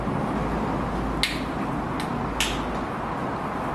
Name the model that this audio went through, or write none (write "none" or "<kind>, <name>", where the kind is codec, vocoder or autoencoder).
none